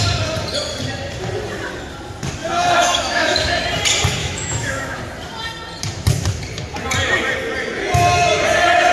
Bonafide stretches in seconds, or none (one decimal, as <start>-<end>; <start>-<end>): 0.0-2.4; 3.6-4.2; 5.0-8.9